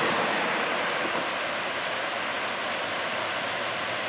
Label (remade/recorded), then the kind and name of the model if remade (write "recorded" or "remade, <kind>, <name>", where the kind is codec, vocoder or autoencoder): recorded